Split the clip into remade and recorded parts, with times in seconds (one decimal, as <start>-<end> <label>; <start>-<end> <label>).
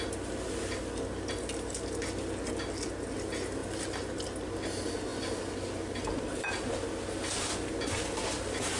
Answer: 0.0-8.8 recorded